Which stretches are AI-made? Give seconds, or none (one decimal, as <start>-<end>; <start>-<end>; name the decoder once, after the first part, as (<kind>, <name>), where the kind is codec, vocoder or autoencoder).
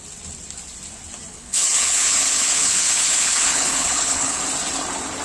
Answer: 1.3-4.4 (codec, HILCodec)